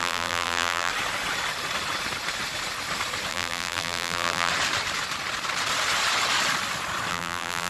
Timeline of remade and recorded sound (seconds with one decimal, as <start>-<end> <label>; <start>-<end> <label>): 0.0-0.9 remade; 0.9-3.3 recorded; 3.3-4.5 remade; 4.5-7.1 recorded; 7.1-7.7 remade